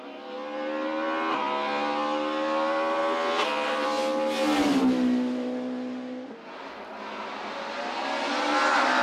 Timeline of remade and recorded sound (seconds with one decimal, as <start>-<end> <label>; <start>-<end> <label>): 0.0-9.0 recorded